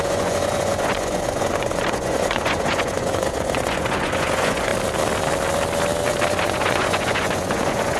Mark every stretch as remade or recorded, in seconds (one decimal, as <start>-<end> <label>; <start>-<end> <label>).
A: 0.0-4.7 remade; 4.7-6.4 recorded; 6.4-8.0 remade